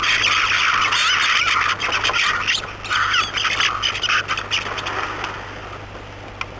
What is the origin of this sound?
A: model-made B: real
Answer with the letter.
B